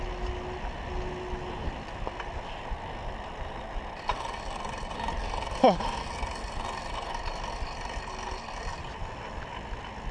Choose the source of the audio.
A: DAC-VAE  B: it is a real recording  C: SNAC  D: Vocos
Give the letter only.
B